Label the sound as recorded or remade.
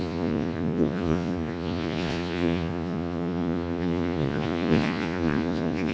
remade